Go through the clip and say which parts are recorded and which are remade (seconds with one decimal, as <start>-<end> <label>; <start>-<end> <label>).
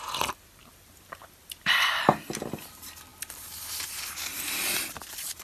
0.0-5.4 recorded